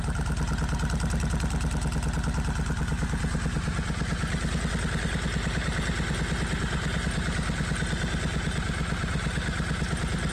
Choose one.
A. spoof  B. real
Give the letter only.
B